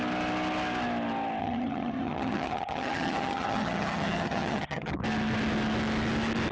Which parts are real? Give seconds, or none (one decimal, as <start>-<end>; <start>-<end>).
0.0-1.4; 4.9-6.5